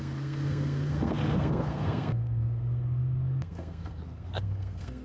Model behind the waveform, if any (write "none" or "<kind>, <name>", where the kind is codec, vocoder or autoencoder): codec, SNAC